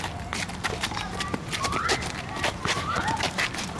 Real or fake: fake